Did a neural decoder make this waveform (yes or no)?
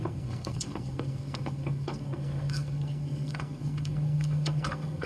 yes